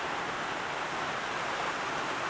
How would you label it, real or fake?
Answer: fake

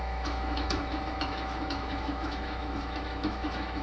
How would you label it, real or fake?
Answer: fake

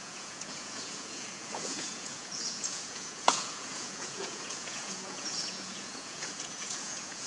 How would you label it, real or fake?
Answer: fake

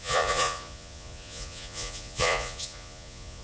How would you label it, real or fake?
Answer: fake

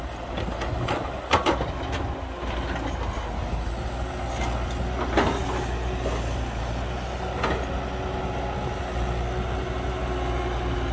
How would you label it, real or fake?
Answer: real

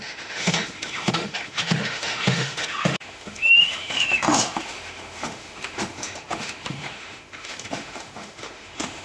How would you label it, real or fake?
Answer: fake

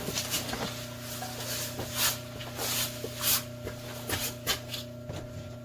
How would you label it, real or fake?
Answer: real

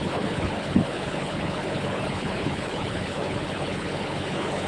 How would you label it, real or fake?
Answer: fake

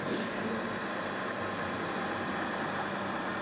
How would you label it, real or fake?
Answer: real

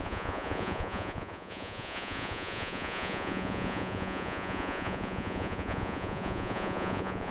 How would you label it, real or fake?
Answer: fake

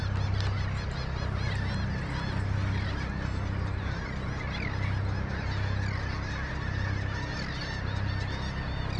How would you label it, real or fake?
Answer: real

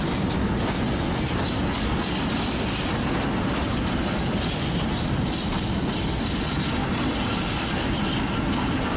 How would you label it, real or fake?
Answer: real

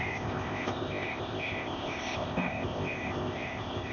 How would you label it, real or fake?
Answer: fake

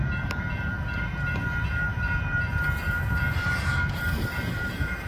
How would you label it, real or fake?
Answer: fake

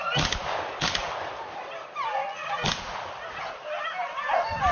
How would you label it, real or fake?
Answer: real